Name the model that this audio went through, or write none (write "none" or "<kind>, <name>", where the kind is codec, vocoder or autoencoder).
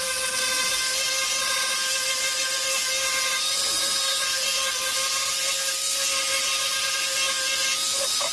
none